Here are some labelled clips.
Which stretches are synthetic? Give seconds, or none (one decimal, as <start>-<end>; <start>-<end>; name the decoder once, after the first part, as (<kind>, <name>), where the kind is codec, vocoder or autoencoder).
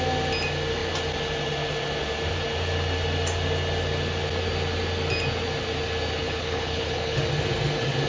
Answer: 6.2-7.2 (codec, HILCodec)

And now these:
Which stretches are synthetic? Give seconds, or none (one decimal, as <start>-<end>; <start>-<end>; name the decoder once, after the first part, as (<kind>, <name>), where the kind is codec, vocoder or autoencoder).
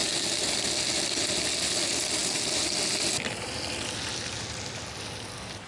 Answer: none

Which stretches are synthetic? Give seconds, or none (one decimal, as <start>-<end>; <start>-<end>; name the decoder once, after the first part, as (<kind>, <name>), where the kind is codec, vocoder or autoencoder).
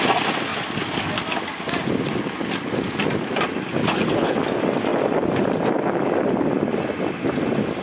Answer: 3.8-4.4 (codec, HILCodec)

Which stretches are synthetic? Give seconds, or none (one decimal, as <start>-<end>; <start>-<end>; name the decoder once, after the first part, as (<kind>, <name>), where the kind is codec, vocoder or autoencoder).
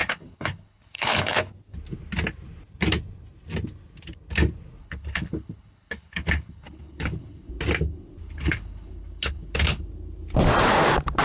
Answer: 0.0-1.5 (codec, HILCodec); 4.8-7.5; 8.2-9.8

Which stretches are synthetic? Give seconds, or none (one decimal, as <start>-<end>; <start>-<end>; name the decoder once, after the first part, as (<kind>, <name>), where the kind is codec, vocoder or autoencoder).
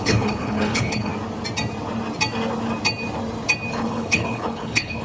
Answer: 0.0-1.1 (codec, HILCodec); 3.7-5.0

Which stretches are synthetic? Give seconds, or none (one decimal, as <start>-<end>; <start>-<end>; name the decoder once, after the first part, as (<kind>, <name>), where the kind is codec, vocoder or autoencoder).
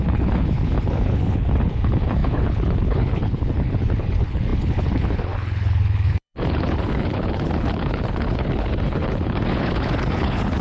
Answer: 0.0-10.6 (codec, HILCodec)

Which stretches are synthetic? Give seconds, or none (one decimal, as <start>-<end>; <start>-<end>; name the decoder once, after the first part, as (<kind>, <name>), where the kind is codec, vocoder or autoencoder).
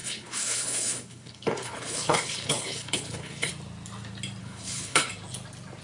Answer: 0.0-3.5 (codec, HILCodec); 4.4-5.1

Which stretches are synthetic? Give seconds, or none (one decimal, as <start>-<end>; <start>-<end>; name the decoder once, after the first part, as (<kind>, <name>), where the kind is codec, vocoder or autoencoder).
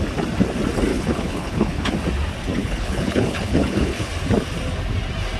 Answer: 0.9-1.9 (codec, HILCodec); 2.6-4.1